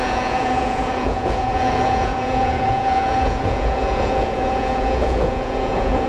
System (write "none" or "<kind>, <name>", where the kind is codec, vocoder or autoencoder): vocoder, Vocos